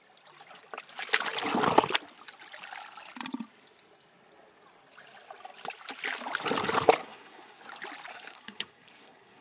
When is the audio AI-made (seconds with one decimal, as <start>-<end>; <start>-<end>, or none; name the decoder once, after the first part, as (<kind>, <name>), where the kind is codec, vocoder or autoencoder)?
7.0-7.6 (codec, SNAC); 8.1-9.4